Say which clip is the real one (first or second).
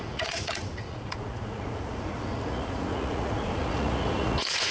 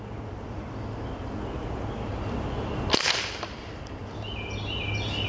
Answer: second